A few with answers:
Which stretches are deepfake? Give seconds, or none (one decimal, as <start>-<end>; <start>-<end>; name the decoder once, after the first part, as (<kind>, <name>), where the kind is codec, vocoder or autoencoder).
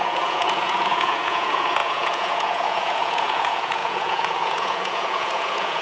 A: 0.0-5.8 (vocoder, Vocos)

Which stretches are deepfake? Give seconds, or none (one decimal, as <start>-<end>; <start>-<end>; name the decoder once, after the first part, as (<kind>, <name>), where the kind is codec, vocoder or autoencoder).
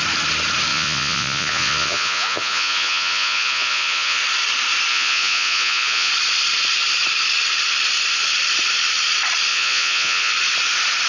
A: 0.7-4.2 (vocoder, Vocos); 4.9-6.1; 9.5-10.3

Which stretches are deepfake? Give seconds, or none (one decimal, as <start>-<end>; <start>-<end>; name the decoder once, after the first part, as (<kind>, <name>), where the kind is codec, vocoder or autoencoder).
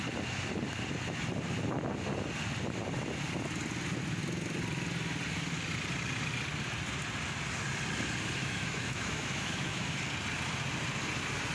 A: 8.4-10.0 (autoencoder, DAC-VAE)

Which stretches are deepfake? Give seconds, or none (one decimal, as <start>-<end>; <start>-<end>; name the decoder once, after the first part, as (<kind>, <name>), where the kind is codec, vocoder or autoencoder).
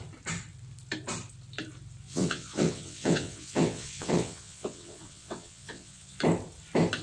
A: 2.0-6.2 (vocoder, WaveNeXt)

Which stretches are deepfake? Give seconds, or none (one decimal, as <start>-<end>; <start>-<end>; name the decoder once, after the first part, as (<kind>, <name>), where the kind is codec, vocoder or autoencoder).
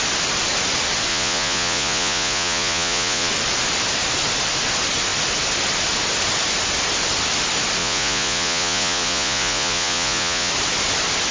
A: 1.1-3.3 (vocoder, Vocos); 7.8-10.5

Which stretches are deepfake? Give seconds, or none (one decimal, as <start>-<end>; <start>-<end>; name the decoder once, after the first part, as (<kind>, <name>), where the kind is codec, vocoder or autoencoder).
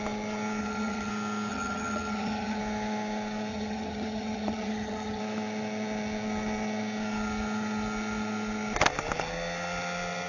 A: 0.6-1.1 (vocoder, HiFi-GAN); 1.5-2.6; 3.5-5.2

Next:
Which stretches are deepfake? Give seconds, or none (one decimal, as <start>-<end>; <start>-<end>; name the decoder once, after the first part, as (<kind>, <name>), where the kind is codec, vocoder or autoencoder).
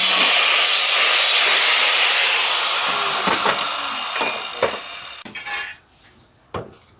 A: none